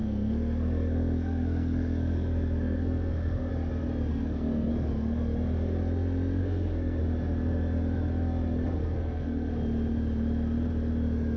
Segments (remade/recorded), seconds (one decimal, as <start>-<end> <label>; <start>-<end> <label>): 0.0-3.5 remade; 3.5-4.1 recorded; 4.1-4.7 remade; 4.7-6.4 recorded; 6.4-7.0 remade; 7.0-8.8 recorded; 8.8-9.5 remade; 9.5-11.4 recorded